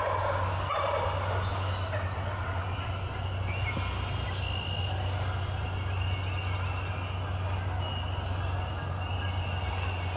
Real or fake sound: real